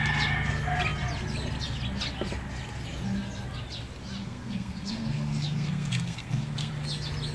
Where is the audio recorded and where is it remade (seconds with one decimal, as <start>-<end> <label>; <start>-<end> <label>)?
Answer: 0.0-4.2 recorded; 4.2-6.7 remade; 6.7-7.3 recorded